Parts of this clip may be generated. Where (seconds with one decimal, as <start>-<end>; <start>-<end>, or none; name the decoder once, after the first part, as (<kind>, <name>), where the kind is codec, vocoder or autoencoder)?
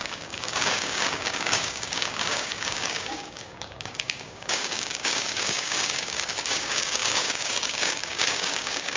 0.0-9.0 (codec, DAC)